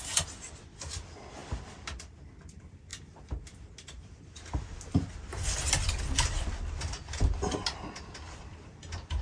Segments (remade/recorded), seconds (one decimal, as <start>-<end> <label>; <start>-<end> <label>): 0.0-9.2 recorded